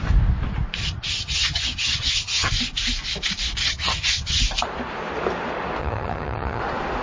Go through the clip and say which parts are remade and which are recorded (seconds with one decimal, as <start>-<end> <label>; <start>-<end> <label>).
0.0-0.8 recorded; 0.8-2.5 remade; 2.5-3.6 recorded; 3.6-4.4 remade; 4.4-5.8 recorded; 5.8-6.6 remade; 6.6-7.0 recorded